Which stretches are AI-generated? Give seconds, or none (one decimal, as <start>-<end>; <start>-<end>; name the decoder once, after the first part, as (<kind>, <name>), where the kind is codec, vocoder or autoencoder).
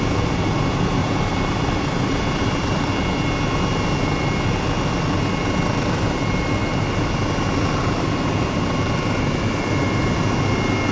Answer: 1.0-2.9 (vocoder, BigVGAN v2)